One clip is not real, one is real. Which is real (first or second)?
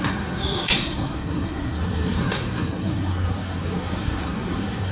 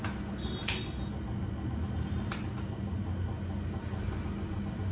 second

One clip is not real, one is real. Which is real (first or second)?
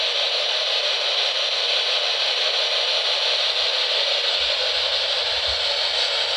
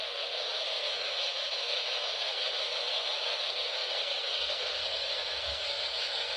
first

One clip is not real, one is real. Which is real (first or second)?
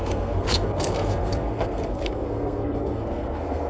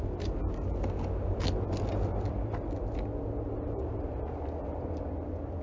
second